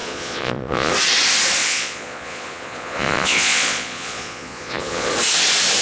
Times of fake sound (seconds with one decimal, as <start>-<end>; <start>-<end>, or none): 0.0-0.9; 1.6-5.1